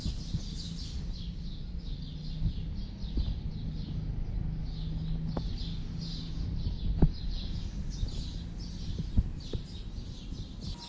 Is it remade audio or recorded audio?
recorded